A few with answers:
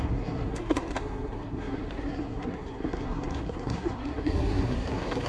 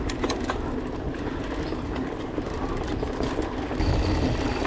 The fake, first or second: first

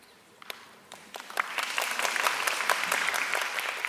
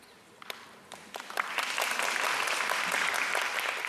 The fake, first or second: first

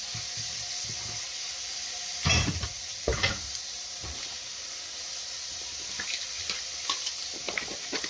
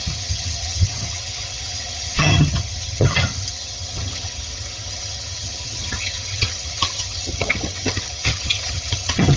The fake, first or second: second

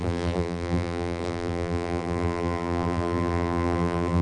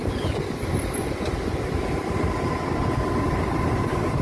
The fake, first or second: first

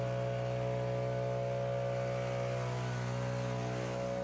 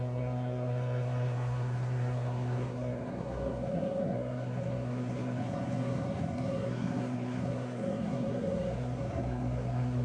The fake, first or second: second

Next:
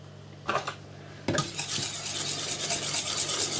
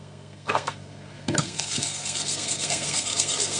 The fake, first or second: second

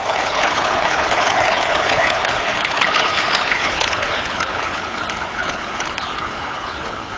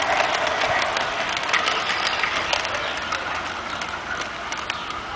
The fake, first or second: first